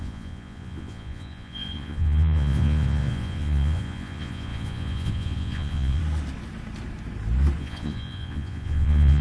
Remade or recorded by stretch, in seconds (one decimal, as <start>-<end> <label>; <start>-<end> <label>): 0.0-6.0 remade; 6.0-7.6 recorded; 7.6-9.2 remade